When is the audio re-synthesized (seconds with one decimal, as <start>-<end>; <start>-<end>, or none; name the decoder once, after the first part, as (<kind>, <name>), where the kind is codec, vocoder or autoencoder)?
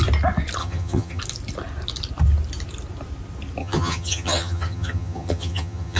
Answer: 0.6-1.2 (vocoder, HiFi-GAN); 3.6-6.0